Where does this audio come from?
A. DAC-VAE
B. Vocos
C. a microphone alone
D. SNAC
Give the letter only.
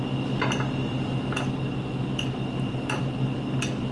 C